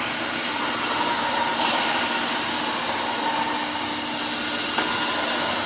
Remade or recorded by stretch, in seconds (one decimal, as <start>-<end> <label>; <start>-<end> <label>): 0.0-5.7 recorded